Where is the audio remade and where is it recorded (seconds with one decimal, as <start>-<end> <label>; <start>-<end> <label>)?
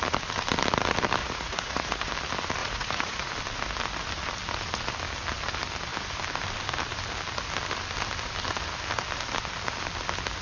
0.0-1.2 recorded; 1.2-2.1 remade; 2.1-2.6 recorded; 2.6-3.3 remade; 3.3-10.4 recorded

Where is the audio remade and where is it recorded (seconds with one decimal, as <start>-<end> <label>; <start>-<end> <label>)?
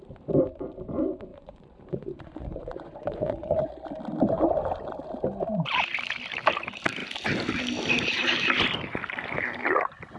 0.0-1.3 recorded; 1.3-3.7 remade; 3.7-10.2 recorded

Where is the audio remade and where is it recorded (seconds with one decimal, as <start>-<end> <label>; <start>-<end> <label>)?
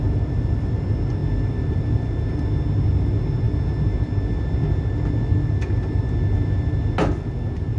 0.0-7.8 recorded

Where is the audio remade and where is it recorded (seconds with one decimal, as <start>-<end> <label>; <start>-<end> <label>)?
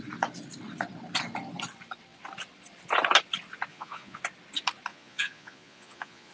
0.0-3.7 recorded; 3.7-4.2 remade; 4.2-4.9 recorded; 4.9-6.3 remade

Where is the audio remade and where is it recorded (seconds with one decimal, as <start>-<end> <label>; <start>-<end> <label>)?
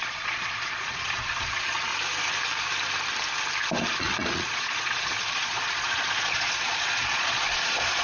0.0-1.9 remade; 1.9-4.0 recorded; 4.0-8.0 remade